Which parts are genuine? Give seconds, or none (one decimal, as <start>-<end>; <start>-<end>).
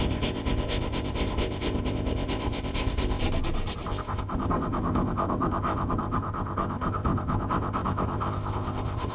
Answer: 3.2-3.9